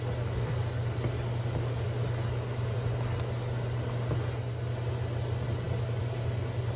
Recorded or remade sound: recorded